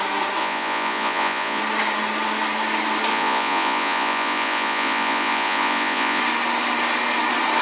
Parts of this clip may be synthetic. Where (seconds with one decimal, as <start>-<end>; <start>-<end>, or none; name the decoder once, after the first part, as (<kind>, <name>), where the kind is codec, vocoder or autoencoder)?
0.4-1.6 (vocoder, Vocos); 3.1-6.2